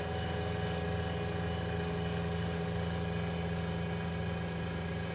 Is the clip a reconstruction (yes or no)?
no